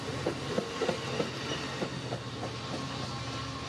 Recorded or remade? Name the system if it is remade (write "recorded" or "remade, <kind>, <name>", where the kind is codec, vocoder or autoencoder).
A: recorded